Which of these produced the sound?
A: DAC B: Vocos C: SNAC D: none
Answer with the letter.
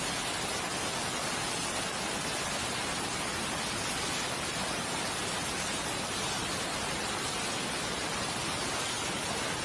D